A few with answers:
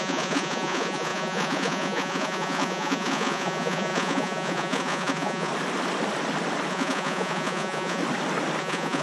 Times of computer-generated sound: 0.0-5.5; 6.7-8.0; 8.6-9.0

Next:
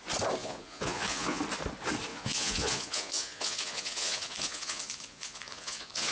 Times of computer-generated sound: 0.4-1.4; 2.1-6.1

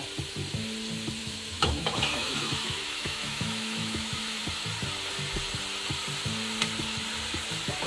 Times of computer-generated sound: 1.2-4.4

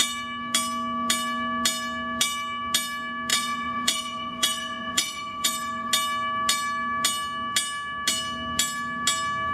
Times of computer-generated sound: 3.3-5.9